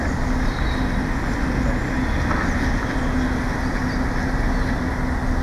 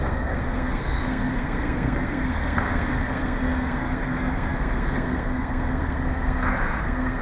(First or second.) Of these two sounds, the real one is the first